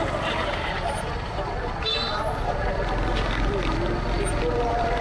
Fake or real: real